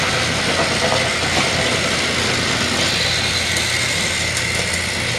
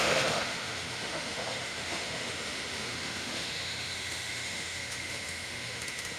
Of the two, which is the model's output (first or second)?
second